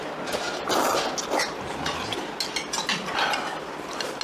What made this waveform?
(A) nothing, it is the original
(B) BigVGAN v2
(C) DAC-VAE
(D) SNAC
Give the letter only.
A